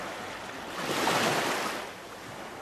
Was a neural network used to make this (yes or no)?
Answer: no